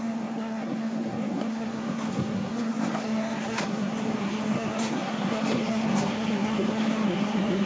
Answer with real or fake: fake